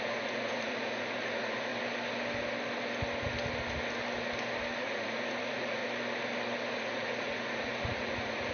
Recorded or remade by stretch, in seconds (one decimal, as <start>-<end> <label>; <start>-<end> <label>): 0.0-1.7 remade; 1.7-4.8 recorded; 4.8-5.8 remade; 5.8-6.7 recorded; 6.7-8.5 remade